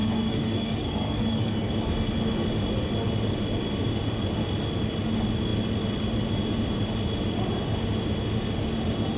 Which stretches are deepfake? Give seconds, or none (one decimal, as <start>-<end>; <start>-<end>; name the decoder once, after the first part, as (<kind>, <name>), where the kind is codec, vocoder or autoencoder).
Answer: 0.0-1.7 (codec, SNAC)